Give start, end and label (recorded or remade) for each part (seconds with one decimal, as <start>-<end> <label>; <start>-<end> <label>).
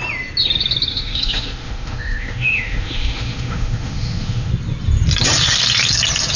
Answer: 0.0-0.9 recorded; 0.9-4.5 remade; 4.5-6.4 recorded